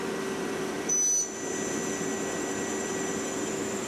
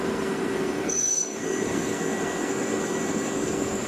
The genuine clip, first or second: first